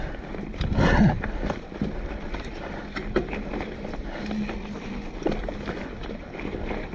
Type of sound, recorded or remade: recorded